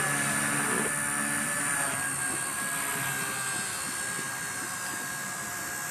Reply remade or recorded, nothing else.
recorded